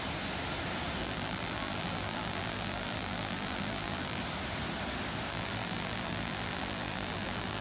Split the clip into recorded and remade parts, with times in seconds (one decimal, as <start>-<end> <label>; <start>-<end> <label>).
0.0-1.0 recorded; 1.0-4.2 remade; 4.2-5.3 recorded; 5.3-7.6 remade